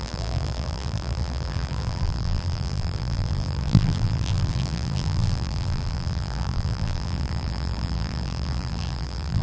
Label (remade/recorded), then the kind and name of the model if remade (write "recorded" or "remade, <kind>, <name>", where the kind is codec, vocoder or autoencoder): remade, vocoder, BigVGAN v2